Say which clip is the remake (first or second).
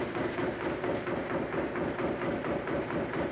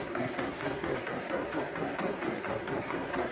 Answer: second